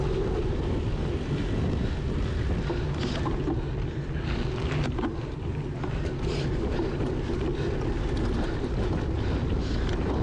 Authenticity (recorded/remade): recorded